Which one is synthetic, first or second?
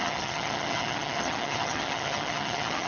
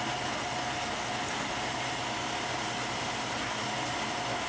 first